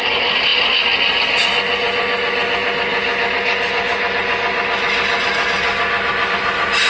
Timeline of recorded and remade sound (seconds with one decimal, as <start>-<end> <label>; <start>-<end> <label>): 0.0-6.9 recorded